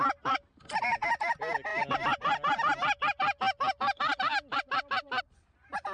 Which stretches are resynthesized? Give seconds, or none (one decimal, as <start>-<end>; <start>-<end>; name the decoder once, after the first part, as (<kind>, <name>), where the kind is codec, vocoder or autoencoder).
none